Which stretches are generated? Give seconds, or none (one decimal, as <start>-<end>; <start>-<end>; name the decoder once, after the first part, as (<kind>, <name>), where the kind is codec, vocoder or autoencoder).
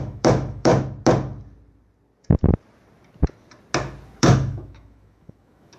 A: 0.0-0.7 (autoencoder, DAC-VAE); 4.2-5.8